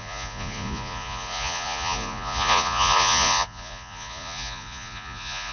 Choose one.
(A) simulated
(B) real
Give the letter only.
A